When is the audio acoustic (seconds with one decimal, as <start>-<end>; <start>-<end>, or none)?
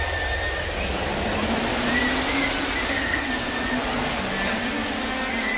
0.0-2.8; 3.3-5.6